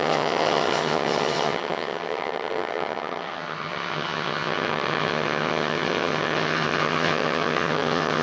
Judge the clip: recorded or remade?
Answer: remade